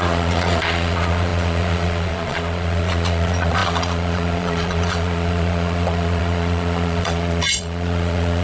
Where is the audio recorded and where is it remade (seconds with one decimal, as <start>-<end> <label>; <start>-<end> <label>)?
0.0-8.4 remade